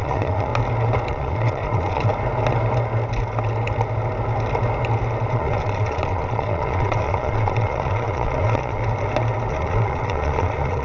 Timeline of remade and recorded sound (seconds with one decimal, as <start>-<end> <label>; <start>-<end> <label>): 0.0-0.5 remade; 0.5-1.1 recorded; 1.1-2.1 remade; 2.1-5.3 recorded; 5.3-8.8 remade; 8.8-9.5 recorded; 9.5-10.8 remade